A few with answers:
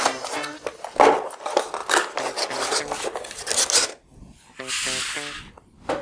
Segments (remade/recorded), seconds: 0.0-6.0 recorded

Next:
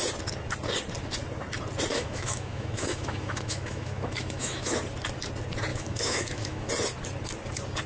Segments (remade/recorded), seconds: 0.0-1.9 recorded; 1.9-4.8 remade; 4.8-5.7 recorded; 5.7-6.7 remade; 6.7-7.9 recorded

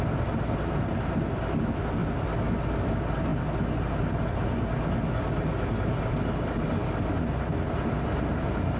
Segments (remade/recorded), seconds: 0.0-8.8 recorded